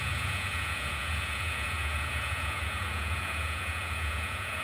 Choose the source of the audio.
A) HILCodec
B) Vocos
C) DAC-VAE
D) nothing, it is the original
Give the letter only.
B